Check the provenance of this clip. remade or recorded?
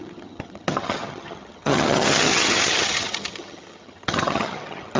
remade